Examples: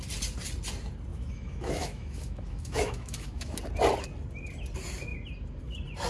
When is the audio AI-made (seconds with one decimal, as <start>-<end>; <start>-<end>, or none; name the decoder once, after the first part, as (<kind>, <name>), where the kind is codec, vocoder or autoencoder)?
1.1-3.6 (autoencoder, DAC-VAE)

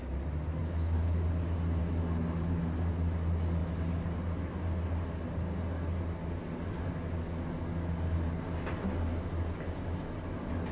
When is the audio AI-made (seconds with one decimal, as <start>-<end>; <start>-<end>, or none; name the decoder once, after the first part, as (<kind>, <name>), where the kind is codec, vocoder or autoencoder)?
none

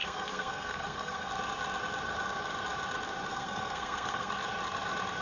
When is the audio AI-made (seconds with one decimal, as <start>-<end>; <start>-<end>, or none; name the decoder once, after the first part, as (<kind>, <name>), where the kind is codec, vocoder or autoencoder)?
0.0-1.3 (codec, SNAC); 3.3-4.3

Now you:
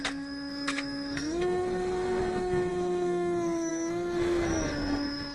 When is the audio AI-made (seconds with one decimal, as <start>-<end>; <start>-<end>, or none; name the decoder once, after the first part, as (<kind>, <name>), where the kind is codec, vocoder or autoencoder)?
0.0-5.3 (codec, SNAC)

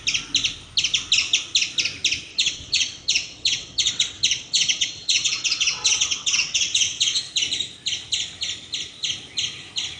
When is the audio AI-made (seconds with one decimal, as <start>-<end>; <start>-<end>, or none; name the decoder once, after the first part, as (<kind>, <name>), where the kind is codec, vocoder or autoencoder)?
2.3-7.2 (vocoder, WaveNeXt)

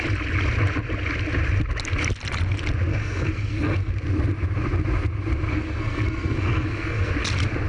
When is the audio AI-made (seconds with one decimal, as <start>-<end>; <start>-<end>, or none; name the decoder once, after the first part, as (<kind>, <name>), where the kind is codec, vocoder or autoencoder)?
2.9-3.9 (codec, SNAC); 5.5-7.1

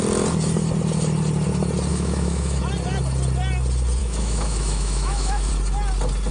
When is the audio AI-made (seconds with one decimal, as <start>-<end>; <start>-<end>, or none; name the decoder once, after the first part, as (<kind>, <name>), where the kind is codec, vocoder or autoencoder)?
1.9-2.6 (autoencoder, DAC-VAE); 4.0-5.5